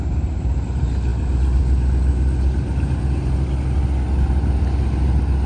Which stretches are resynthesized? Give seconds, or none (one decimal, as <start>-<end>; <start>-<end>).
none